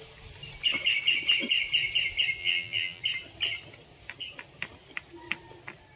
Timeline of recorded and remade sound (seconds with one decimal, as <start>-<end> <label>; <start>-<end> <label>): 0.0-2.4 recorded; 2.4-3.0 remade; 3.0-6.0 recorded